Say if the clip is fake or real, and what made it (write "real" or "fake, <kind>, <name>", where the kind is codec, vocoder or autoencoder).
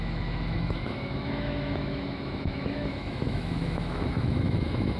fake, autoencoder, DAC-VAE